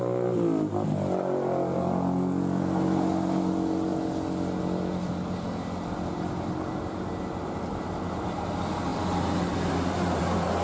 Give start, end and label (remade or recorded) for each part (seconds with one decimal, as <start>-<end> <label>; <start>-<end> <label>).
0.0-10.6 recorded